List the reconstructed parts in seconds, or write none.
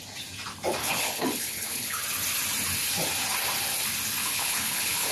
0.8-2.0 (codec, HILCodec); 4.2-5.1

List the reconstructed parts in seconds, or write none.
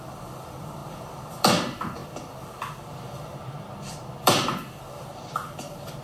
0.0-2.0 (vocoder, BigVGAN v2); 3.4-6.0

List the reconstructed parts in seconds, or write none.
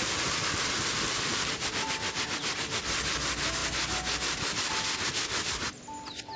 none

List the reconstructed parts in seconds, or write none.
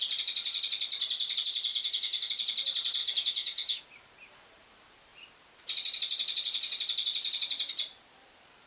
1.7-2.3 (autoencoder, DAC-VAE); 3.0-3.8